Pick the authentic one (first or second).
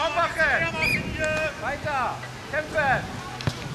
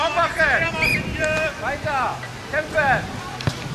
first